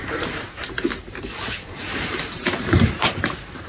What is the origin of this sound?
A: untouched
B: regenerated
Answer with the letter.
B